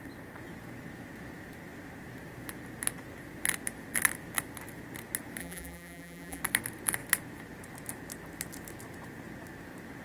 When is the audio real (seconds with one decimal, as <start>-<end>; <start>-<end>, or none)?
0.0-5.4; 6.4-10.0